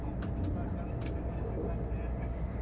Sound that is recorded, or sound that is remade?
recorded